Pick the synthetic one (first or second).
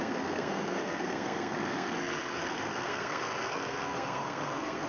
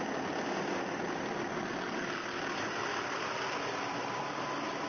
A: first